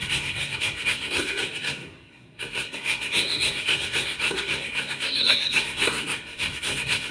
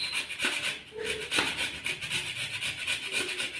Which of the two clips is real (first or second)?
second